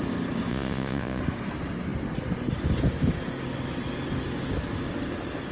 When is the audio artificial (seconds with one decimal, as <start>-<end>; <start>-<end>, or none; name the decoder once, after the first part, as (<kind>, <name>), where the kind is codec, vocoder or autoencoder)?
0.5-1.2 (vocoder, Vocos)